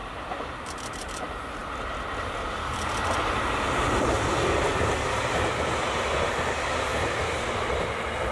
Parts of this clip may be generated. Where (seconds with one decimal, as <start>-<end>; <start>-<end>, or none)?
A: none